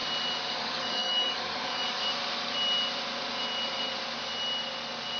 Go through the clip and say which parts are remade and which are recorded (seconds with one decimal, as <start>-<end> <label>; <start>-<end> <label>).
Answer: 0.0-0.6 recorded; 0.6-2.0 remade; 2.0-5.2 recorded